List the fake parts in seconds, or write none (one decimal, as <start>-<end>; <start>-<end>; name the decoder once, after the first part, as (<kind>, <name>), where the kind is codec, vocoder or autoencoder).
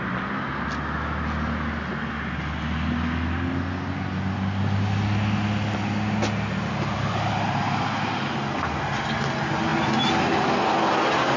none